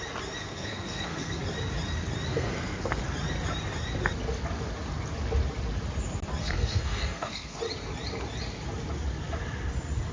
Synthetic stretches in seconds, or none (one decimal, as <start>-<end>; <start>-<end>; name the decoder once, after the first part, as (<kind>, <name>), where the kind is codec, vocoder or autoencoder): 0.4-1.4 (codec, SNAC); 2.3-3.0; 6.4-7.6